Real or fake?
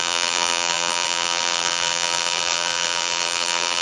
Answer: fake